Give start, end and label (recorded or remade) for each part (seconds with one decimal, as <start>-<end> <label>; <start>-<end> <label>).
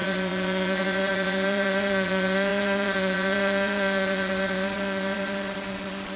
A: 0.0-6.2 remade